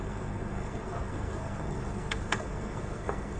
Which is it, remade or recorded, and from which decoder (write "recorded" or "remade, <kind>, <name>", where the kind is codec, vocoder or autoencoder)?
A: remade, codec, SNAC